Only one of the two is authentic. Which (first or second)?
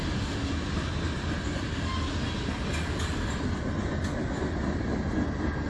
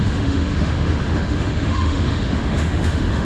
first